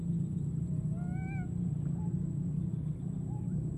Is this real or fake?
real